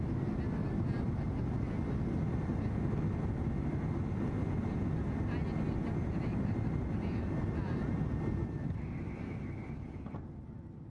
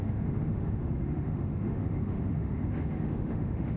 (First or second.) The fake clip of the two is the second